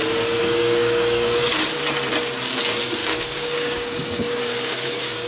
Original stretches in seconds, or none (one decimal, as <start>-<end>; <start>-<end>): 0.0-0.4; 1.5-3.0